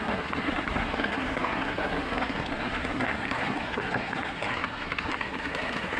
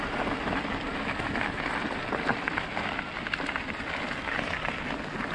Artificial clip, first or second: first